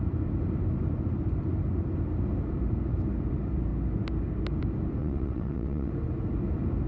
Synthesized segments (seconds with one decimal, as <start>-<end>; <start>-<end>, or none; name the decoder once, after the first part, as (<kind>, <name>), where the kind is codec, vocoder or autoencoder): 5.0-5.9 (vocoder, WaveNeXt)